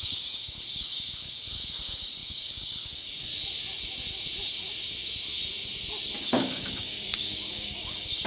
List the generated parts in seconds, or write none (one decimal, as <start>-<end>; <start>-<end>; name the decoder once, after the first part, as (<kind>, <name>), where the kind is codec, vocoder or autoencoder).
0.0-3.3 (codec, DAC); 6.2-8.3